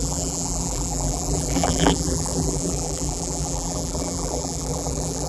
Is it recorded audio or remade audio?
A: remade